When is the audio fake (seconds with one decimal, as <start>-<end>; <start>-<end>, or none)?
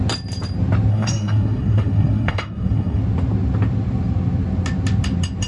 0.9-3.0